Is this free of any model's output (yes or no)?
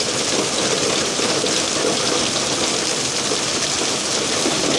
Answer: yes